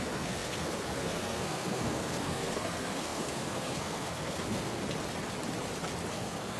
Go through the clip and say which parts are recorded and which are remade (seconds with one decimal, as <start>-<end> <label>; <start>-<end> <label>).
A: 0.0-4.8 remade; 4.8-6.1 recorded; 6.1-6.6 remade